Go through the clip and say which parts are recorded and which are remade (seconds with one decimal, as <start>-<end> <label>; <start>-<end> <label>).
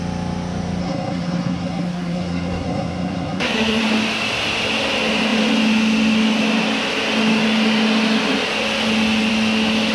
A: 0.0-0.8 recorded; 0.8-3.8 remade; 3.8-9.9 recorded